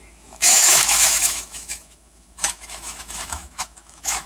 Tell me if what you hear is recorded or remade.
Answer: remade